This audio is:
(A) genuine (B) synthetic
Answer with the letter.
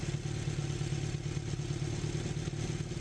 A